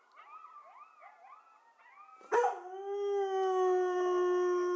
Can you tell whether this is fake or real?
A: real